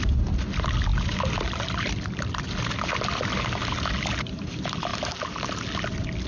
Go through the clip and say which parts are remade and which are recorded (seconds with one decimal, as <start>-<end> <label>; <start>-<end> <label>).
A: 0.0-6.3 recorded

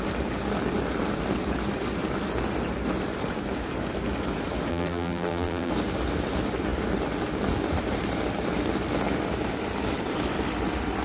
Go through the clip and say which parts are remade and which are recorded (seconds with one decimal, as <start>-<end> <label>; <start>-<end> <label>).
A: 0.0-4.7 recorded; 4.7-5.7 remade; 5.7-11.0 recorded

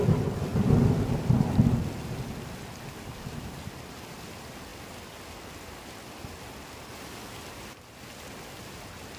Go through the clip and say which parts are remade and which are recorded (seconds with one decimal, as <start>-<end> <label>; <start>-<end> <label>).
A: 0.0-9.2 recorded